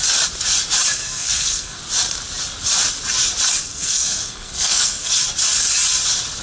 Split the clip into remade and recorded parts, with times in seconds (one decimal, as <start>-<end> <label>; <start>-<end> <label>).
0.0-1.0 recorded; 1.0-1.8 remade; 1.8-3.7 recorded; 3.7-5.1 remade; 5.1-6.4 recorded